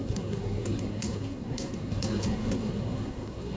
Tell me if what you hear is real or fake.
fake